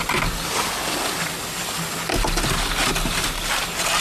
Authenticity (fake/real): real